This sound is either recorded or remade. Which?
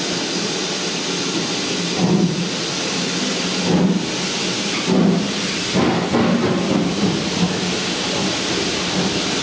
recorded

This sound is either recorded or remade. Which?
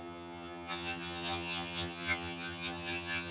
remade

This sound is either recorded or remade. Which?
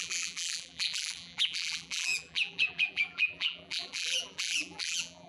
remade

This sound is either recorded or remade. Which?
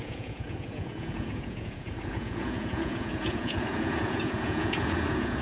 remade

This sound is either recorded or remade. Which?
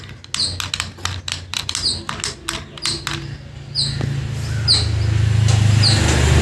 recorded